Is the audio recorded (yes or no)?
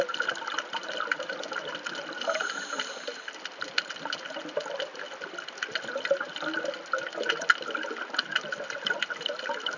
yes